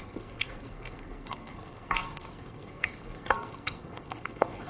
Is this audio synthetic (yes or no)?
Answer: yes